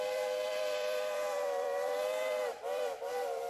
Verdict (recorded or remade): remade